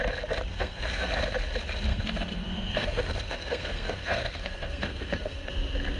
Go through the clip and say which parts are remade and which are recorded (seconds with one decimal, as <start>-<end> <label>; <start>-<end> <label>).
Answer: 0.0-0.5 recorded; 0.5-1.1 remade; 1.1-1.9 recorded; 1.9-5.5 remade; 5.5-6.0 recorded